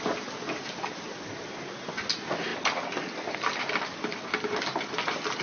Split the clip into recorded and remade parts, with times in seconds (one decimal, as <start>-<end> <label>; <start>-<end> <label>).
0.0-5.4 recorded